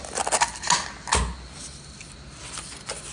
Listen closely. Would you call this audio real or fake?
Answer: real